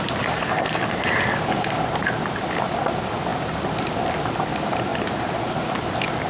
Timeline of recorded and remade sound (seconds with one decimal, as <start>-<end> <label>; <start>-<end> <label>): 0.0-6.3 recorded